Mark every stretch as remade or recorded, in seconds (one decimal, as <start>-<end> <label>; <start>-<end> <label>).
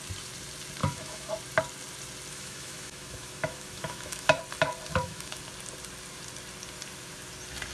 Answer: 0.0-0.8 recorded; 0.8-1.3 remade; 1.3-2.3 recorded; 2.3-4.4 remade; 4.4-4.9 recorded; 4.9-5.4 remade; 5.4-7.7 recorded